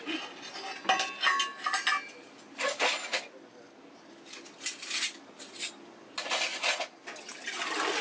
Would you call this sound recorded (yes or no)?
yes